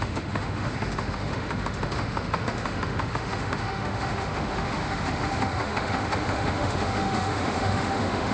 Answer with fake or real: fake